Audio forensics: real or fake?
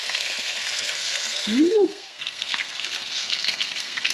fake